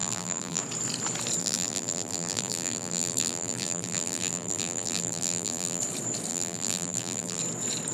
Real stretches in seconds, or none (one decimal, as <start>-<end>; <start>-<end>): 0.6-1.4; 5.8-6.3; 7.4-7.9